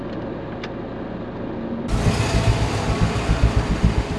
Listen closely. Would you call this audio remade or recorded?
recorded